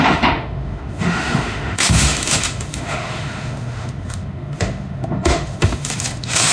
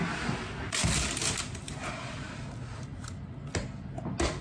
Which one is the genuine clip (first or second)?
second